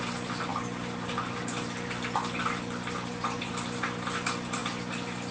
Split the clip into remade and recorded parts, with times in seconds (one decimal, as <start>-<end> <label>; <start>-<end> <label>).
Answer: 0.0-5.3 recorded